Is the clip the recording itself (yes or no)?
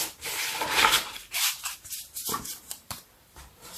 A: no